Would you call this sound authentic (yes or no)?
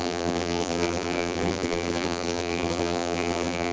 no